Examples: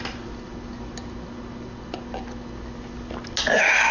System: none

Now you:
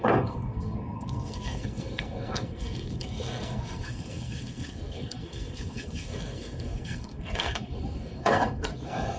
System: codec, SNAC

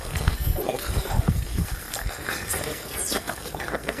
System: codec, SNAC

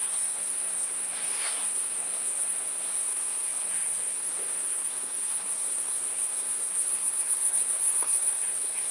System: codec, SNAC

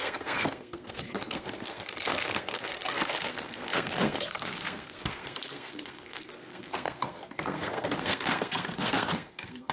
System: codec, SNAC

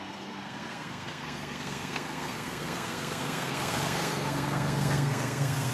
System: codec, SNAC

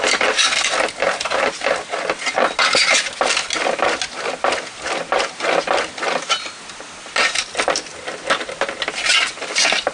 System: none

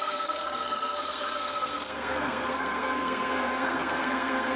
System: codec, SNAC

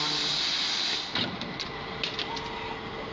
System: none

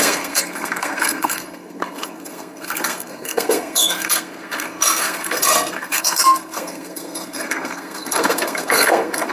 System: codec, SNAC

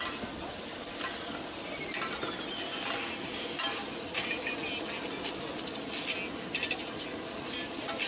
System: none